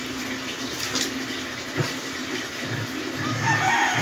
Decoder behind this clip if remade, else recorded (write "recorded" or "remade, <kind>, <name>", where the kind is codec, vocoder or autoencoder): recorded